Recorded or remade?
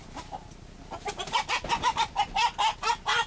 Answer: recorded